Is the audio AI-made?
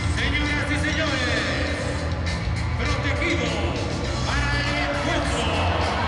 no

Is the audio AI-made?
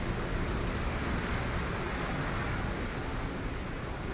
no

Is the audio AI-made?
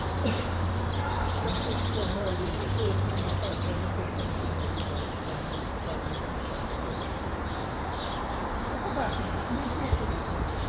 yes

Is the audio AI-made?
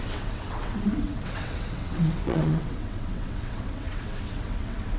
yes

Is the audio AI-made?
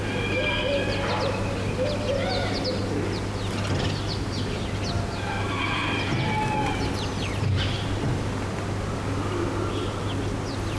no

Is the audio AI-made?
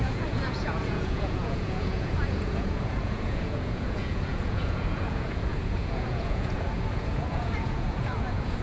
yes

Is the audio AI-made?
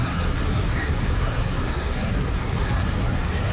yes